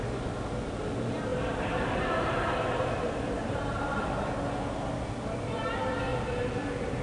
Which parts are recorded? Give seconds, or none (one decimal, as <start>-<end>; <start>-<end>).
0.0-1.3; 4.3-6.1